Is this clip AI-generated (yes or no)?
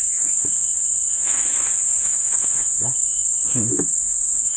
yes